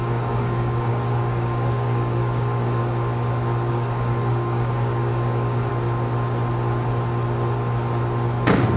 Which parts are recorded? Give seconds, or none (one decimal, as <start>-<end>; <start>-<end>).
2.8-3.7; 5.7-8.8

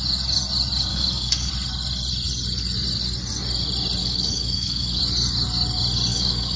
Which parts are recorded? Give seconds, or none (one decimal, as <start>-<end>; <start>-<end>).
0.0-0.9; 1.5-4.0; 5.0-6.1